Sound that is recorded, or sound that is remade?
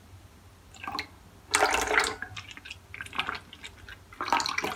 recorded